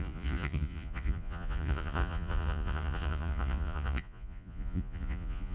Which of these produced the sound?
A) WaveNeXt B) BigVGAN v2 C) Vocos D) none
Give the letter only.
C